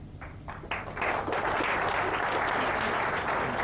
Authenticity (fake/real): real